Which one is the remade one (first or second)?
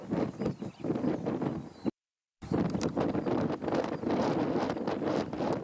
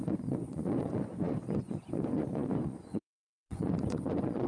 second